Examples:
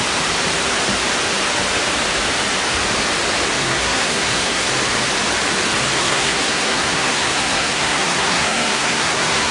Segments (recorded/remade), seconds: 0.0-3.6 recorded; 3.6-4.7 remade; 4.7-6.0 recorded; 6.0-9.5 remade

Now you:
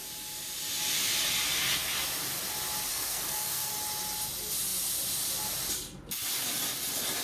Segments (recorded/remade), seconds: 0.0-2.9 recorded; 2.9-3.7 remade; 3.7-7.2 recorded